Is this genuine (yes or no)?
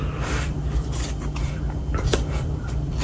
no